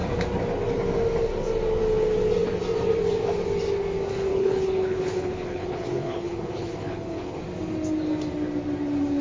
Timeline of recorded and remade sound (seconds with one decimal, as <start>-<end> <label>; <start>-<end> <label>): 0.0-4.3 recorded; 4.3-7.4 remade; 7.4-9.2 recorded